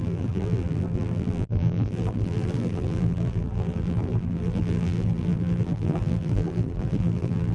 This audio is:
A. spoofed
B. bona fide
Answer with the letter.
A